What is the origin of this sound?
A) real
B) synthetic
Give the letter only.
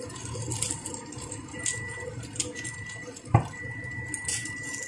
A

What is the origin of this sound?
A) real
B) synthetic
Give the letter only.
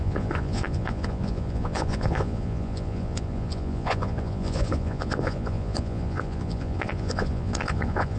B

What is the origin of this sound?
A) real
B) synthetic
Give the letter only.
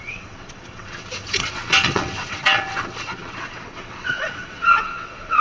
B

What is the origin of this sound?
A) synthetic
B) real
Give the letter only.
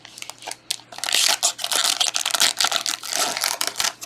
B